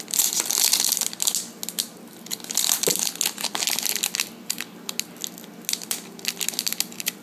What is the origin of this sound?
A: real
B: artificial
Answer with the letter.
A